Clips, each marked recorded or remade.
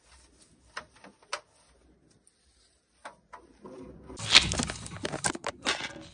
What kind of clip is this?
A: recorded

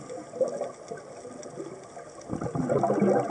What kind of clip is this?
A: recorded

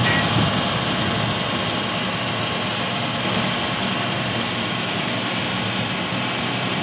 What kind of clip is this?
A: recorded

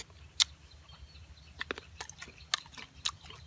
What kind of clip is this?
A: recorded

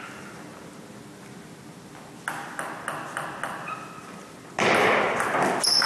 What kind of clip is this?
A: recorded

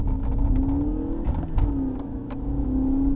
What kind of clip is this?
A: recorded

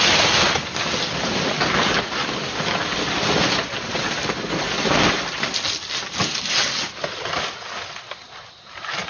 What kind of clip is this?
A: recorded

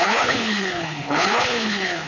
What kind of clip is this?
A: remade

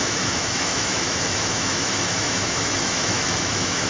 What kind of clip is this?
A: remade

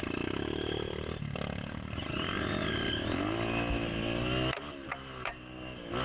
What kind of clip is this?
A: recorded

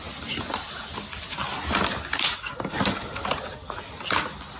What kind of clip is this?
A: recorded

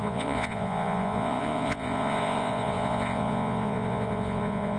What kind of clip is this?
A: remade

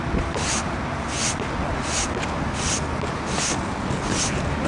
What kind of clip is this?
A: recorded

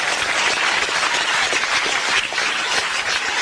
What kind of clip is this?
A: remade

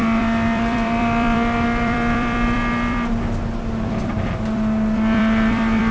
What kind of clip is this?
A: remade